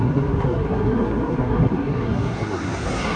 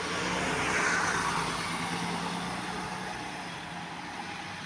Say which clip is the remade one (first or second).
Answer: first